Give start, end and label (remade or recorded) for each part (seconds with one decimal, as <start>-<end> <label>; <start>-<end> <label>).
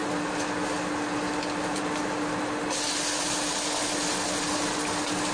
0.0-5.3 recorded